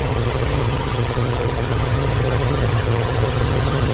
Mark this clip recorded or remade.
remade